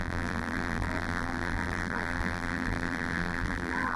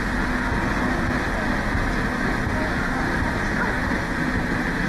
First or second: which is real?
second